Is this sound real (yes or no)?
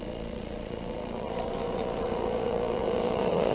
no